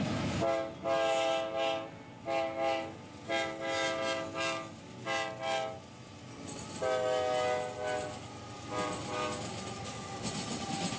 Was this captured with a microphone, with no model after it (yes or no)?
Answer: yes